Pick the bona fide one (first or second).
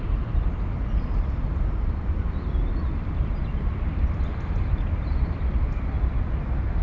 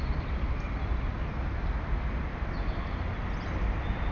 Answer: second